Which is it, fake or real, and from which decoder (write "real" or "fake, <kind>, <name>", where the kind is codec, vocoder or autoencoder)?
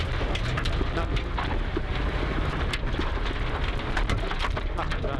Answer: real